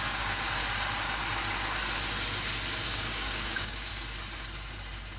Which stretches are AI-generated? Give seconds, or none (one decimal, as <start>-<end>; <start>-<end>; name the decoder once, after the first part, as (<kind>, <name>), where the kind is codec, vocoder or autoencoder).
0.0-0.6 (codec, DAC); 2.9-3.9